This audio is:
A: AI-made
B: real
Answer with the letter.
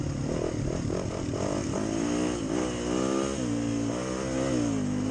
B